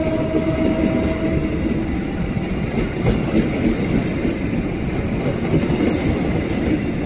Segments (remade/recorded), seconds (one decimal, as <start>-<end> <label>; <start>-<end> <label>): 0.0-7.1 recorded